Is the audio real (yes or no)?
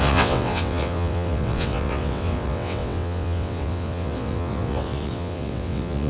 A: no